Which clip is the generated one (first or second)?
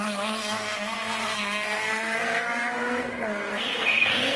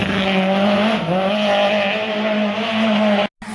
first